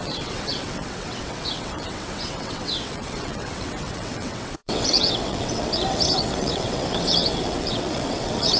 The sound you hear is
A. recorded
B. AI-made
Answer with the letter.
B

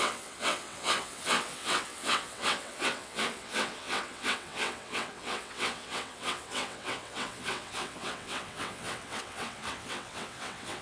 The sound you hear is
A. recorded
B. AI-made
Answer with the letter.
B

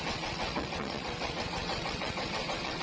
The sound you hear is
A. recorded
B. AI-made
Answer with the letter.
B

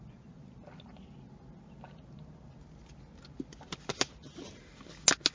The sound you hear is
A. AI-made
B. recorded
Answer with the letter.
B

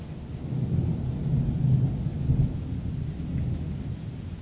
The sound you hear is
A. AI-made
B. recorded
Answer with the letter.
B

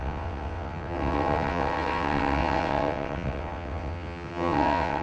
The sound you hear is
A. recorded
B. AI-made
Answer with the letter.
B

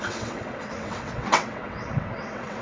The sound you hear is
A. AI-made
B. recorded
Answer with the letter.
A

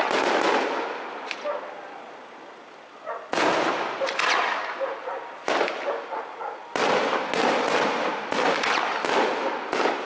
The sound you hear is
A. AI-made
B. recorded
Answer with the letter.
B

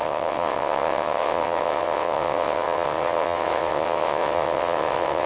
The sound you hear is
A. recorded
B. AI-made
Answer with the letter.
B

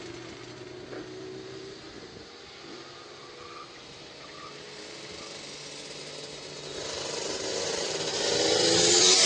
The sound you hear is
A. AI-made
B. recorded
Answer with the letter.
B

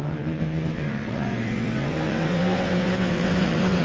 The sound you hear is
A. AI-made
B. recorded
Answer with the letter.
A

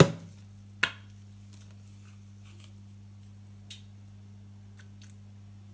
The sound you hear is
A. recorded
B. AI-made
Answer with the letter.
A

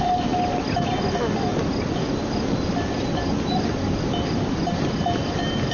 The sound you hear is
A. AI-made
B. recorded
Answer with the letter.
B